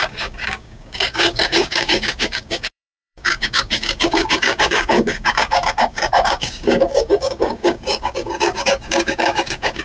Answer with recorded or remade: remade